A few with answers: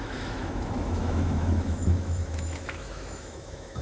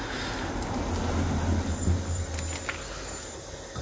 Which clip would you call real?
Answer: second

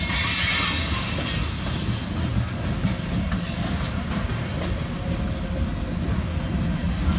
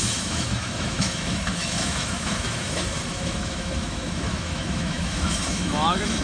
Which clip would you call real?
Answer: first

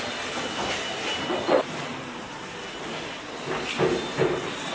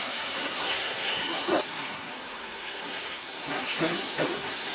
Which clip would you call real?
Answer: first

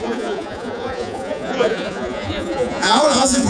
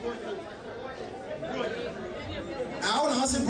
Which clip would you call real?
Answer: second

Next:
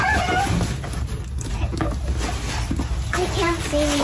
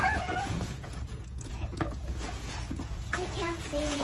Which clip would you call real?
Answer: first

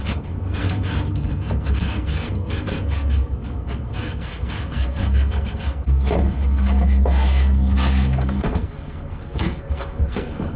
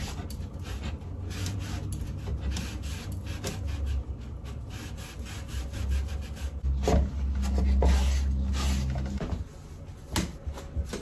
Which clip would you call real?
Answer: second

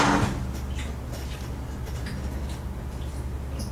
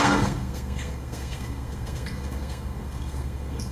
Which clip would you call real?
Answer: first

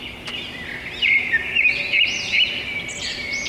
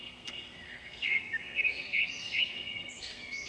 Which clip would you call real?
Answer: first